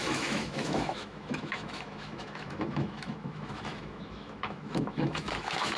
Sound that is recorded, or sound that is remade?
remade